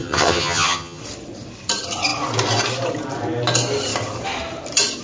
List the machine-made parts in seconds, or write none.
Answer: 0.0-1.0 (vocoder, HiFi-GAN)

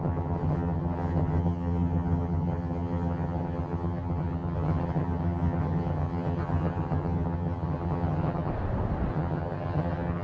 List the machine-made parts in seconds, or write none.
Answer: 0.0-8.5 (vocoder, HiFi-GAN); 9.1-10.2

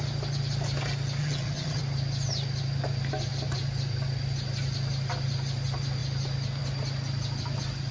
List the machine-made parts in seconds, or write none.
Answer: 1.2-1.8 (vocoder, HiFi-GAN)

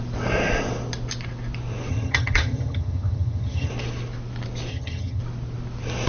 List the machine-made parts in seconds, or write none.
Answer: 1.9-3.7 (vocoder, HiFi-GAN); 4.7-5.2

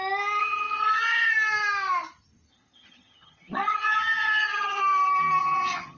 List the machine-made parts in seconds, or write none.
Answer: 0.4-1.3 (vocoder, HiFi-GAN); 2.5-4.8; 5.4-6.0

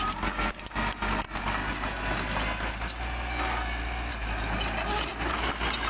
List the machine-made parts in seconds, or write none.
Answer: none

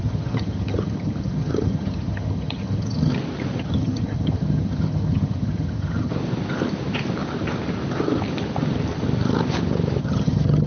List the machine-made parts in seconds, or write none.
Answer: 0.0-3.1 (vocoder, HiFi-GAN); 3.6-6.1; 10.0-10.7

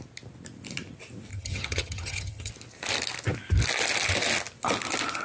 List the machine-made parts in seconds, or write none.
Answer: 1.3-2.5 (vocoder, HiFi-GAN)